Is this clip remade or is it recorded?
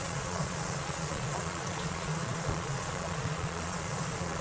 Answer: remade